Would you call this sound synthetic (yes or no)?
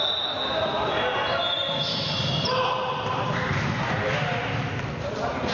no